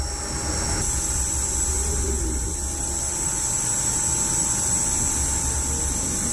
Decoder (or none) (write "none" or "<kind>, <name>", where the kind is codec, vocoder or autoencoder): none